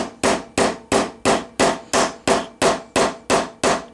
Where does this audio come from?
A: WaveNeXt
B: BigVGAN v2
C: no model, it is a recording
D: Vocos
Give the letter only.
C